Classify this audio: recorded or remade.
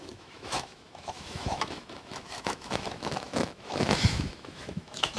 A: remade